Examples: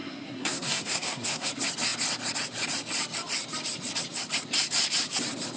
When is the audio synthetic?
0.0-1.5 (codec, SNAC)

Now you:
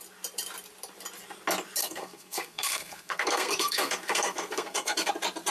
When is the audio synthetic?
1.8-5.1 (codec, SNAC)

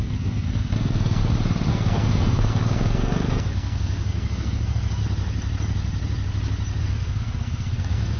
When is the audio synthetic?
0.0-1.2 (codec, SNAC); 1.7-5.0; 6.8-8.2

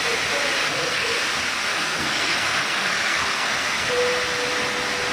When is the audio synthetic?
0.6-1.2 (codec, SNAC); 1.7-3.9

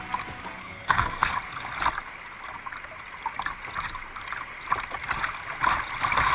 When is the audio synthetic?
0.6-1.3 (codec, SNAC)